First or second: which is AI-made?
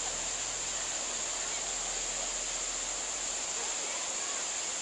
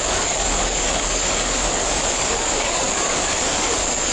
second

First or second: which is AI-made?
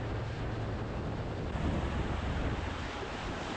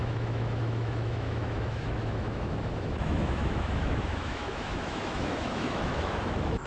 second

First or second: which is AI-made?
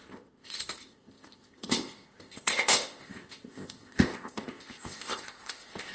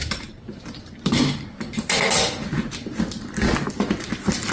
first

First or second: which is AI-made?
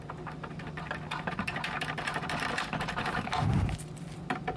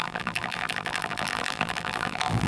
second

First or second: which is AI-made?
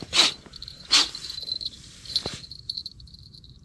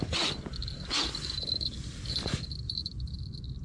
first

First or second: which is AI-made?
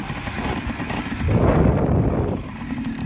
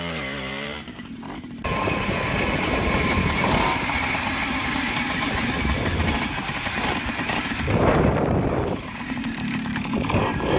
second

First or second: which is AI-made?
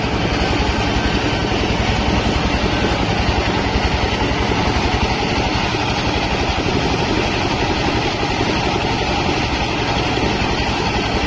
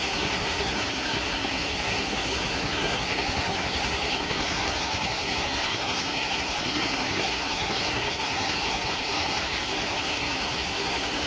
second